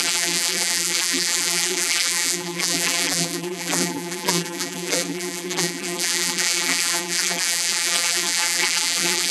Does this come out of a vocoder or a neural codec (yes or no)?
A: yes